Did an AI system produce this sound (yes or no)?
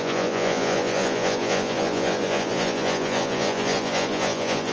yes